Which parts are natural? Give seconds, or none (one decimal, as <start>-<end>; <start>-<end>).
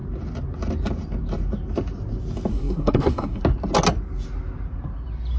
0.0-2.5; 3.4-5.4